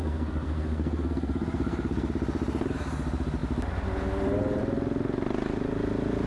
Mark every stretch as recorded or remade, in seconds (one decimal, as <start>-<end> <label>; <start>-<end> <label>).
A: 0.0-2.1 remade; 2.1-6.3 recorded

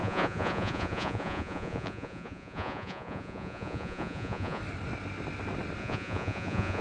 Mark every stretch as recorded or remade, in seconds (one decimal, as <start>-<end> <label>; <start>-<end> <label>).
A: 0.0-4.6 remade; 4.6-5.8 recorded; 5.8-6.8 remade

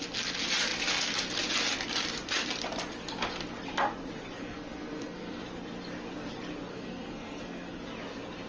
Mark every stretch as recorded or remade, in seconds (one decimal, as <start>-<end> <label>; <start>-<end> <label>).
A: 0.0-4.4 recorded; 4.4-5.4 remade; 5.4-6.7 recorded; 6.7-7.8 remade; 7.8-8.5 recorded

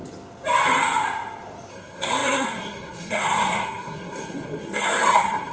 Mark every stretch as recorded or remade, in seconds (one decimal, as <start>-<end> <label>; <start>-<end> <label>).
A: 0.0-1.7 recorded; 1.7-5.5 remade

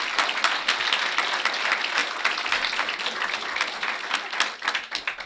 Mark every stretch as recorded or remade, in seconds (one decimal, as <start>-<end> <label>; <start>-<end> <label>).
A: 0.0-5.3 recorded